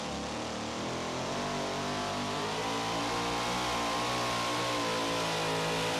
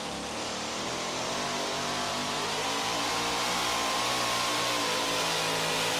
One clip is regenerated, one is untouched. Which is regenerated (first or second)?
second